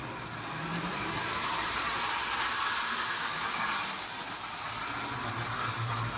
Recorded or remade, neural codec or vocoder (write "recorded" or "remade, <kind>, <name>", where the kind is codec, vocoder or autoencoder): recorded